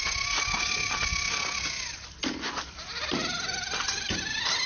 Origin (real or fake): real